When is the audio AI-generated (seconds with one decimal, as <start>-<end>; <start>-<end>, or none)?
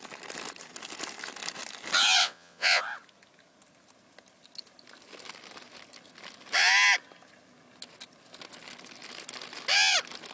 2.2-2.8